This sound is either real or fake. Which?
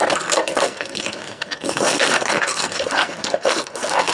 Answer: fake